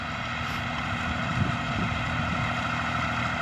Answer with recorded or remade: recorded